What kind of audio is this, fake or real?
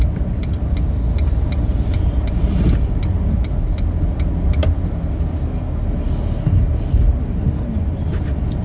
real